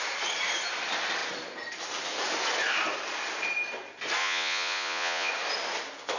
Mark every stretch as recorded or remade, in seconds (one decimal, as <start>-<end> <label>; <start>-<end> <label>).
0.0-4.2 recorded; 4.2-5.3 remade; 5.3-6.2 recorded